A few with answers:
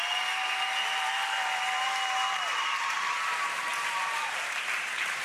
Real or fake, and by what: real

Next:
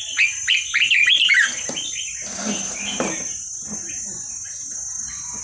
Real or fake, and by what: real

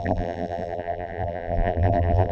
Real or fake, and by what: fake, vocoder, BigVGAN v2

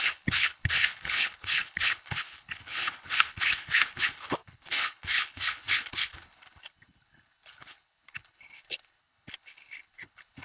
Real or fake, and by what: fake, codec, HILCodec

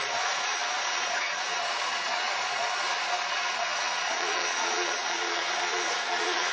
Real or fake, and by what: fake, vocoder, Vocos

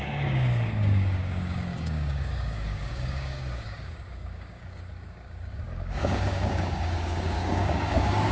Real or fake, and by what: fake, codec, DAC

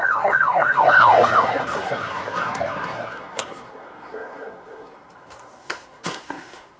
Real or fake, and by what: fake, codec, SNAC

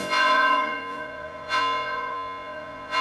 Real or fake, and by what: fake, vocoder, Vocos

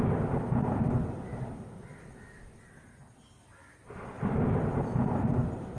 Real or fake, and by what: real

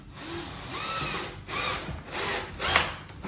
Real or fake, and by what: real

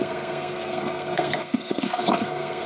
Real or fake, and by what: fake, codec, SNAC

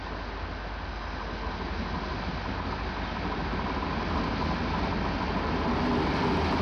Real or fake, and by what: real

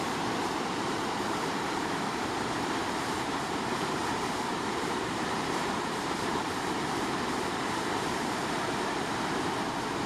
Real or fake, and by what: fake, vocoder, BigVGAN v2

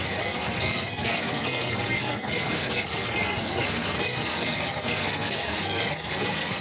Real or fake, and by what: fake, codec, SNAC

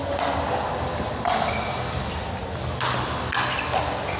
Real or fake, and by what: real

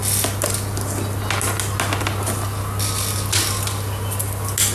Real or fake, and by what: real